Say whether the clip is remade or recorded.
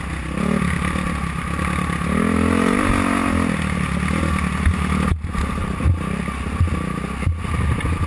recorded